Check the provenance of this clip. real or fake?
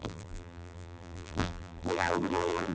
fake